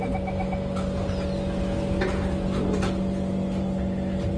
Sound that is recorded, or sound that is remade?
recorded